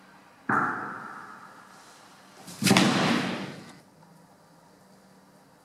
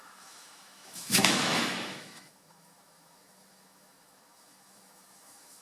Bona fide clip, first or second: first